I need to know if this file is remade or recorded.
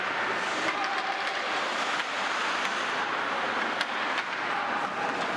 recorded